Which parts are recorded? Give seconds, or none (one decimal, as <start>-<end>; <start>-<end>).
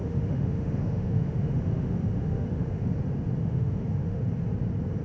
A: 3.0-3.4; 4.2-5.0